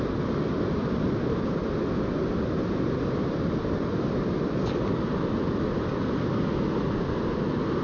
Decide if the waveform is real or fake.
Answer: real